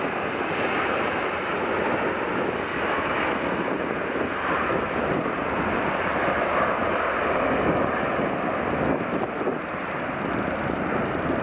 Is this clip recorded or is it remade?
recorded